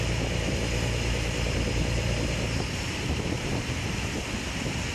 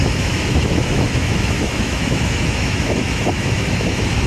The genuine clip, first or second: first